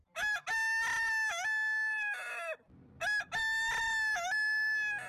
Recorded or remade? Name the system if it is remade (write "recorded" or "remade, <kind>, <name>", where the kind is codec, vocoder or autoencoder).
recorded